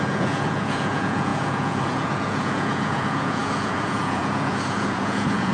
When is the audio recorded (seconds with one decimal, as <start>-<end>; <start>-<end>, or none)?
none